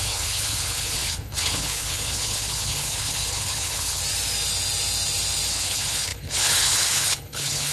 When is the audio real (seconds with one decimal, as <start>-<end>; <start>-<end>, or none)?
4.0-5.5